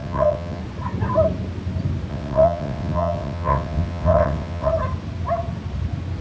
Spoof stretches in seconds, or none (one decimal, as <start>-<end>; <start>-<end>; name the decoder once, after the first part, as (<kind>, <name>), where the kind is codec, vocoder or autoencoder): 0.0-0.6 (vocoder, WaveNeXt); 2.1-4.7